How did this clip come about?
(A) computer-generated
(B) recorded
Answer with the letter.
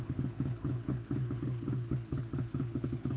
A